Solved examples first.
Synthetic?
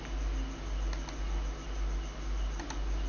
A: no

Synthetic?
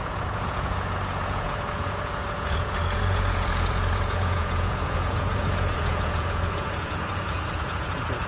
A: yes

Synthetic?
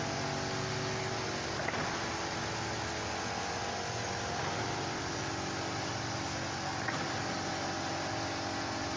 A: no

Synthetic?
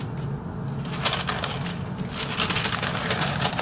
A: no